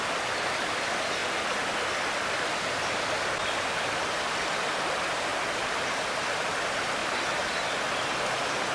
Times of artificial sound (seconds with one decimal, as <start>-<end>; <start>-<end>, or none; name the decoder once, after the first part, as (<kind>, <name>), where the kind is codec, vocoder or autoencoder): 5.3-6.0 (vocoder, BigVGAN v2)